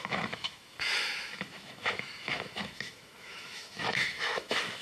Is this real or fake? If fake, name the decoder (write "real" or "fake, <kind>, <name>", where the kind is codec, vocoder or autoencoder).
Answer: fake, autoencoder, DAC-VAE